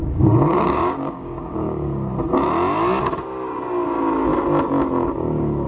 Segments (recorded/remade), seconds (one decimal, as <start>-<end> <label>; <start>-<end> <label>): 0.0-2.1 remade; 2.1-5.1 recorded; 5.1-5.7 remade